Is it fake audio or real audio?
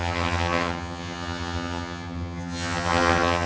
fake